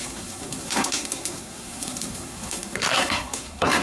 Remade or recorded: remade